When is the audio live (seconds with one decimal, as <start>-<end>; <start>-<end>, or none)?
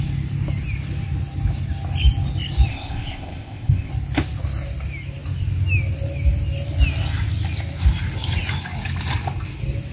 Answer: 0.0-2.7; 3.9-9.9